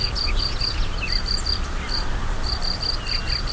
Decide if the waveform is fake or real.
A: real